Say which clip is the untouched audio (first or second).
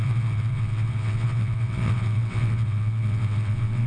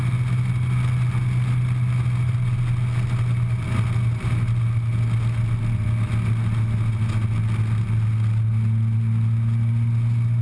second